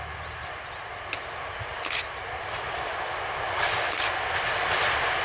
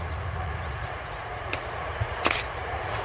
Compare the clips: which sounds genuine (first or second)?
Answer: first